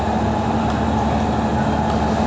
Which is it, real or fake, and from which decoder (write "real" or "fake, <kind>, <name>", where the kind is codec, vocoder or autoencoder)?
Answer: real